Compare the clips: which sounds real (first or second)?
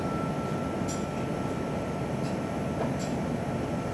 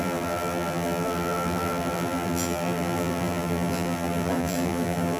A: first